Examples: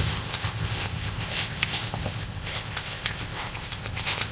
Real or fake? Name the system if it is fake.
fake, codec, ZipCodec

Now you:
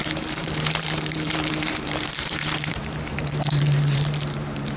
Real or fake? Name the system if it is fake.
fake, vocoder, BigVGAN v2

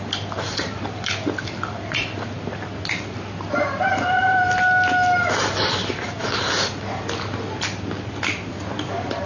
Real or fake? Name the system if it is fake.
real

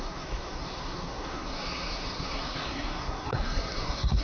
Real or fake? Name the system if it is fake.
fake, codec, SNAC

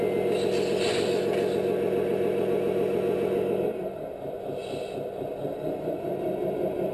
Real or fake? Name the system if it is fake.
real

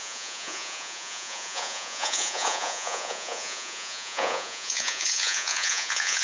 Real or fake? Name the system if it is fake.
fake, vocoder, Vocos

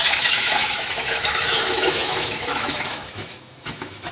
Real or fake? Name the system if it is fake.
fake, autoencoder, DAC-VAE